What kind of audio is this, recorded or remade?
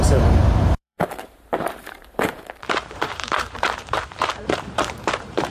remade